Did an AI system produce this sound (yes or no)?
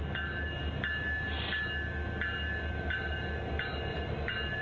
no